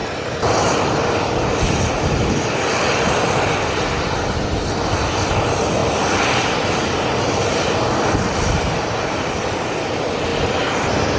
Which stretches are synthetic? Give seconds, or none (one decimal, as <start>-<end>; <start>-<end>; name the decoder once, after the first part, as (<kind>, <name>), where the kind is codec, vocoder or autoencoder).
5.8-6.7 (vocoder, BigVGAN v2)